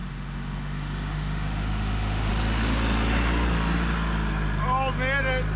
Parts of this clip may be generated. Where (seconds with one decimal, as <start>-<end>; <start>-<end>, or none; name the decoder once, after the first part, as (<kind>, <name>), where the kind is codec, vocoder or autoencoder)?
0.0-2.3 (autoencoder, DAC-VAE)